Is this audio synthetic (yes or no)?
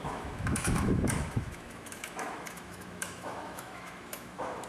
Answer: yes